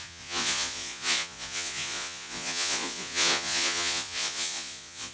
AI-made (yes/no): yes